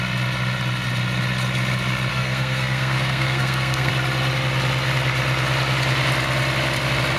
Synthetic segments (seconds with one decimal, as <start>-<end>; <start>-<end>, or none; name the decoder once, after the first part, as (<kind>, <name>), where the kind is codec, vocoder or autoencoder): 2.1-3.9 (codec, SNAC)